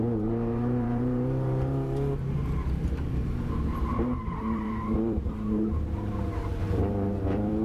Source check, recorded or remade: remade